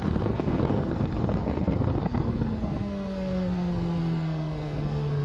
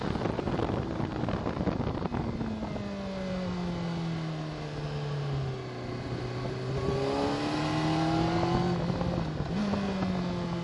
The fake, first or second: first